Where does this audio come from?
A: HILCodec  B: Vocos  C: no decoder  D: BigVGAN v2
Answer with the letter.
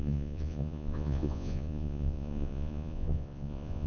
B